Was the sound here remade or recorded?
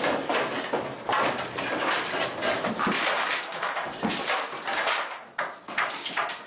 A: recorded